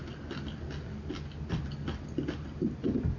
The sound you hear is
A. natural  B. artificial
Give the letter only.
A